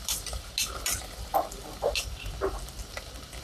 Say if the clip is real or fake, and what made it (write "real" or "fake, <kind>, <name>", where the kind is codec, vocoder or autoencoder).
real